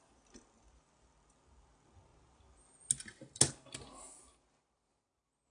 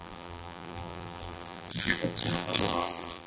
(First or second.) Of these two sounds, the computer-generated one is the second